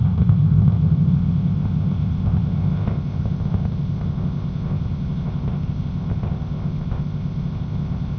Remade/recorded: remade